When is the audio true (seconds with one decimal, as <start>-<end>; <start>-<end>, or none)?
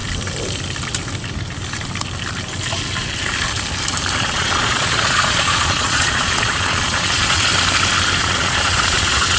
0.0-4.2; 7.5-8.2